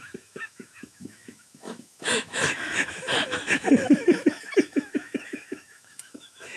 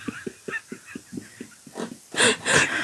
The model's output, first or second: first